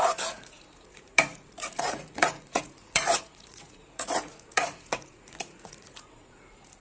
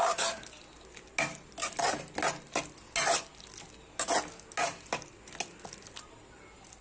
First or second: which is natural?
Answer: second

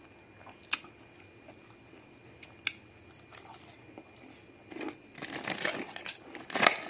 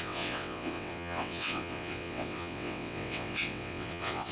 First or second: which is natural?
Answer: first